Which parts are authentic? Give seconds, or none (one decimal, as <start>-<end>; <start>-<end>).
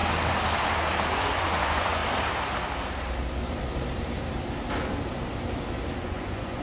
0.0-1.1; 2.0-6.0